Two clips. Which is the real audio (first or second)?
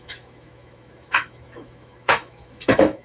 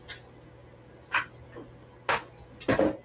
second